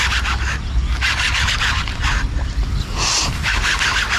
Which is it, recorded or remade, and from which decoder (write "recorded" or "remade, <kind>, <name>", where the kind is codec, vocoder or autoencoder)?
recorded